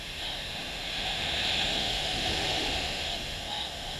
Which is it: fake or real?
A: fake